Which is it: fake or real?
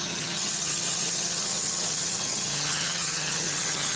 fake